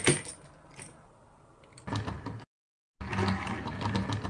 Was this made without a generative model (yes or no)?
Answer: yes